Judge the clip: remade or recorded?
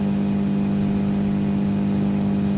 recorded